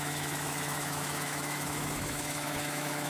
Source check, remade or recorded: remade